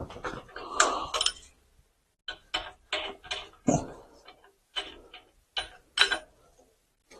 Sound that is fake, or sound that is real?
real